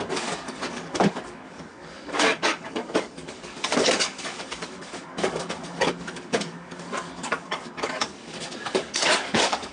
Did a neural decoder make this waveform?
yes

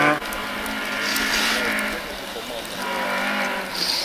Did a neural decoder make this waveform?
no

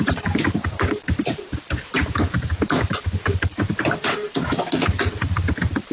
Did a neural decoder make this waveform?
no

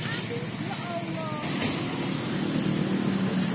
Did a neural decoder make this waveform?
no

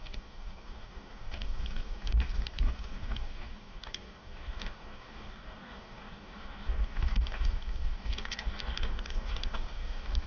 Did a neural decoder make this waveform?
yes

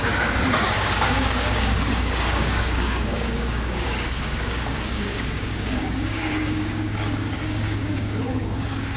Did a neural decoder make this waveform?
yes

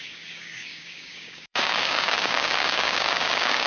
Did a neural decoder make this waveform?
yes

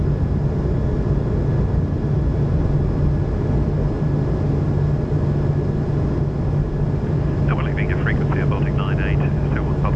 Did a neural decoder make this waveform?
no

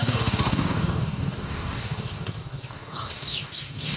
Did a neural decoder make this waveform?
yes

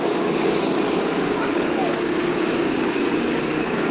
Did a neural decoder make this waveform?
yes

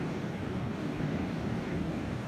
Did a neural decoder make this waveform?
yes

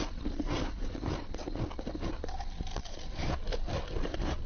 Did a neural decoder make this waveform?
no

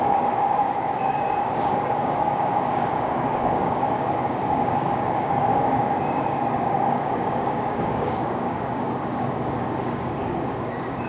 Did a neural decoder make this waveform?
yes